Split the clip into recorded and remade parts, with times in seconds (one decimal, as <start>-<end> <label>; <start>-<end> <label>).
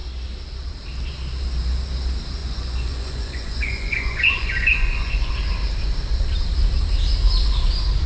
0.0-2.4 recorded; 2.4-5.3 remade; 5.3-8.1 recorded